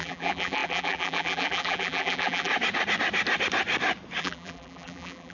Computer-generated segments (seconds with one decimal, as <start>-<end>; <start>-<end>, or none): 0.0-2.5; 4.2-5.3

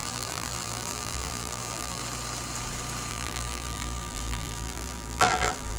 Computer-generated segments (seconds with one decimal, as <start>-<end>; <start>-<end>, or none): 0.0-2.0; 3.1-5.8

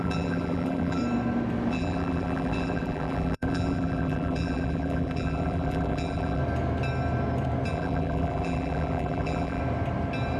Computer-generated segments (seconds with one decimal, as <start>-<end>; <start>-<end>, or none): 0.0-1.0; 1.7-6.4; 7.7-9.6